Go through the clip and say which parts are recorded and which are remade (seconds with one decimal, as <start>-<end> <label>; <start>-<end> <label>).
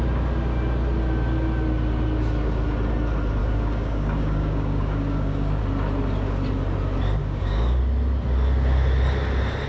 0.0-3.4 recorded; 3.4-5.6 remade; 5.6-7.2 recorded; 7.2-7.8 remade; 7.8-9.7 recorded